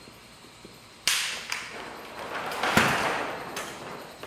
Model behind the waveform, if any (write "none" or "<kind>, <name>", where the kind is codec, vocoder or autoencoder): none